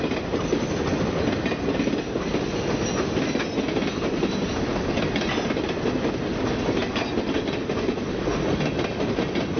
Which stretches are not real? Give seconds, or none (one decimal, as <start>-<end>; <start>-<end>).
none